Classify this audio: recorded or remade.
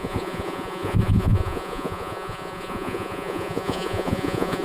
remade